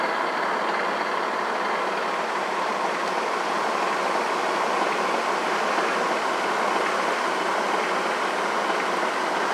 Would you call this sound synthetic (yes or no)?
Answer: no